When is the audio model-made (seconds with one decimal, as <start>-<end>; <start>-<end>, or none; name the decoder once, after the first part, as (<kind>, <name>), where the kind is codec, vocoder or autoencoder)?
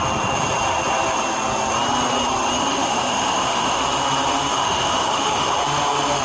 2.6-3.8 (autoencoder, DAC-VAE); 4.5-5.6